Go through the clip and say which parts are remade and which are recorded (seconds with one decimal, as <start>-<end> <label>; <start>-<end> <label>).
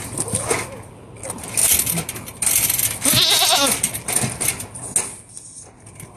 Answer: 0.0-6.2 recorded